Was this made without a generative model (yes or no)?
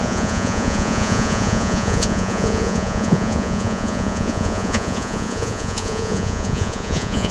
no